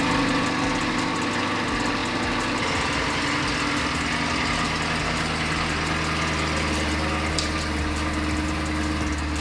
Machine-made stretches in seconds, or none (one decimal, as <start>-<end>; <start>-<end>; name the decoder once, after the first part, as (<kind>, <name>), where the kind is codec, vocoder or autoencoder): none